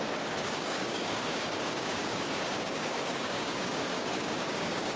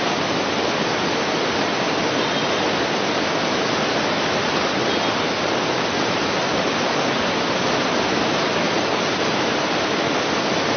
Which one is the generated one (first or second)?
first